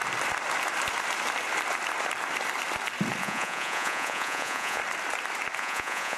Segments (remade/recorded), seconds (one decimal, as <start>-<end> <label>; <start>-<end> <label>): 0.0-3.2 recorded; 3.2-4.8 remade; 4.8-5.6 recorded; 5.6-6.2 remade